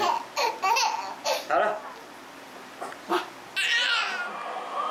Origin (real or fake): real